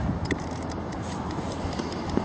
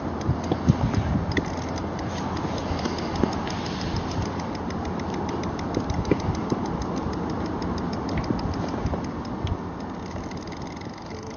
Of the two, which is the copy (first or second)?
first